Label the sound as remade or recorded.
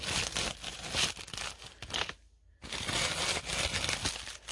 recorded